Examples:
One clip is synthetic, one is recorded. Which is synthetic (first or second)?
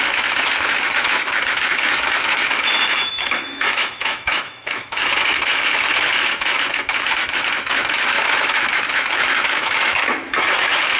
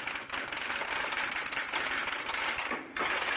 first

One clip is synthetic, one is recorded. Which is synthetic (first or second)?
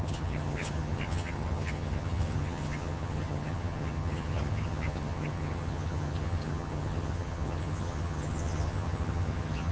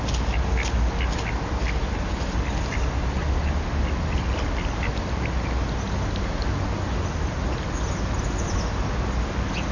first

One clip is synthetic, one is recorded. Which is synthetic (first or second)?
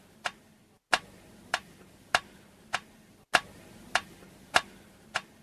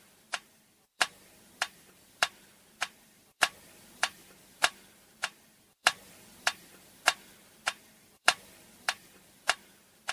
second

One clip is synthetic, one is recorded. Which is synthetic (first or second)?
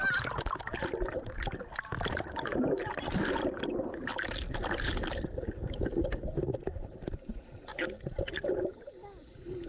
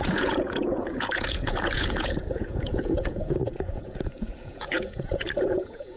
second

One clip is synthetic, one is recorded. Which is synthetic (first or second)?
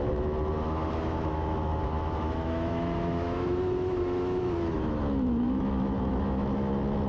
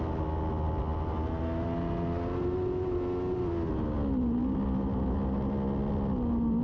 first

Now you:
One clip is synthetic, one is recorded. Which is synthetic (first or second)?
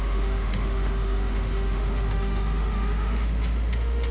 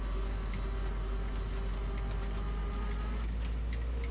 first